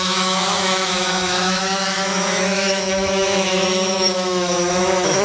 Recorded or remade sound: remade